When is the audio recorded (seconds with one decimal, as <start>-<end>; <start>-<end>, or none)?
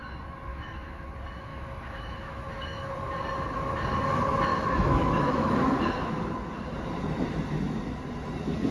0.0-0.5; 1.1-1.5; 2.9-4.5; 5.6-8.7